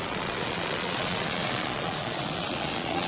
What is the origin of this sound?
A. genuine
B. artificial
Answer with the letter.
B